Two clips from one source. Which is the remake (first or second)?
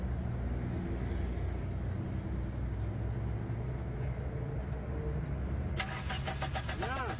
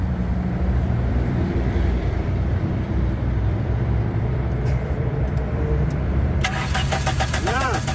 second